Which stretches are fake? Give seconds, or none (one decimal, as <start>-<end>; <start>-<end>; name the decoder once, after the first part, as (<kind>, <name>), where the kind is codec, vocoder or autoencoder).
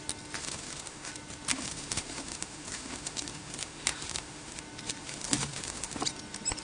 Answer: 0.4-1.1 (autoencoder, DAC-VAE); 1.5-4.6; 5.0-6.0